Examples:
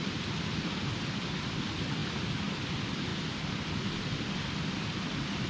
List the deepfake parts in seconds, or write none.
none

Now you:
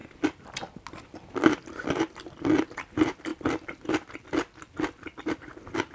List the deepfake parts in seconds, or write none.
none

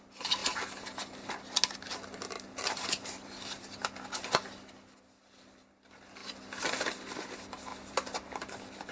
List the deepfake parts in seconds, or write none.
0.0-0.4 (vocoder, BigVGAN v2); 2.7-6.2; 6.9-7.7

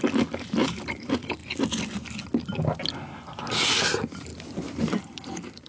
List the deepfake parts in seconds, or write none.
0.0-1.4 (vocoder, BigVGAN v2); 3.7-4.3; 4.9-5.7